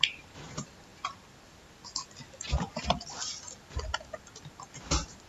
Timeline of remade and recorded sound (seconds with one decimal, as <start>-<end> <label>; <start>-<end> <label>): 0.0-0.9 recorded; 0.9-4.1 remade; 4.1-5.3 recorded